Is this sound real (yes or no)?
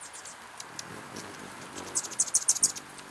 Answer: yes